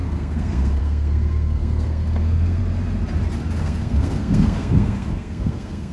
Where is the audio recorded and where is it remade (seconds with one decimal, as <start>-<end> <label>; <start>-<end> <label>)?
0.0-2.6 remade; 2.6-3.6 recorded; 3.6-5.9 remade

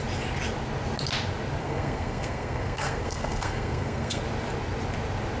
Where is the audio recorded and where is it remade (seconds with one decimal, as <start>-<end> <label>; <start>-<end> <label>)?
0.0-1.6 recorded; 1.6-4.2 remade; 4.2-5.4 recorded

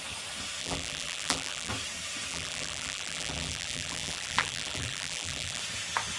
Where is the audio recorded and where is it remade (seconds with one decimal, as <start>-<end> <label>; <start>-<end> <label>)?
0.0-0.6 recorded; 0.6-1.7 remade; 1.7-2.3 recorded; 2.3-5.6 remade; 5.6-6.2 recorded

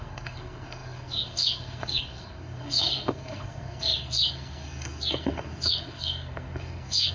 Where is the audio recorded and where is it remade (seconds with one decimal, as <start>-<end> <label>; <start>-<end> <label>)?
0.0-7.1 remade

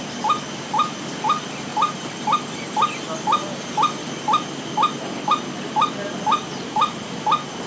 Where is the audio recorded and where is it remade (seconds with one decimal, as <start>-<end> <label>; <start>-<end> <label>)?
0.0-7.7 recorded

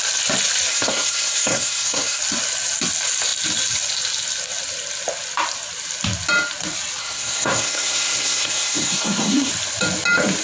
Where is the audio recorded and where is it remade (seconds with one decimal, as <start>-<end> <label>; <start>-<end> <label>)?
0.0-0.7 recorded; 0.7-2.2 remade; 2.2-7.0 recorded; 7.0-9.5 remade; 9.5-10.4 recorded

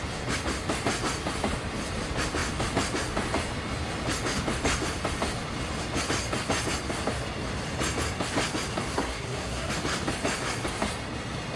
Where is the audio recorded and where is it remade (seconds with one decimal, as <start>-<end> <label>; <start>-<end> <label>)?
0.0-8.9 recorded; 8.9-9.7 remade; 9.7-11.6 recorded